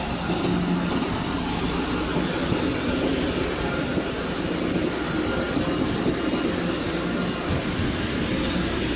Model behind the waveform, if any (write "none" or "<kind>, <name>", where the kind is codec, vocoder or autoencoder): none